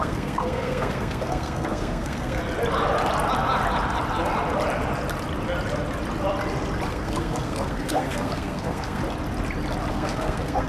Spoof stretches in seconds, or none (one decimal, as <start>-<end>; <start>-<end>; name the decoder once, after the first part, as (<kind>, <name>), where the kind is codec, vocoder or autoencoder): 0.0-2.4 (codec, SNAC); 6.9-9.0; 9.9-10.7